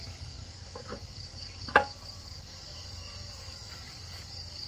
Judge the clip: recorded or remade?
remade